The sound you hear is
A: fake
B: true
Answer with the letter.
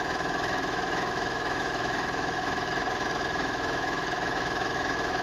A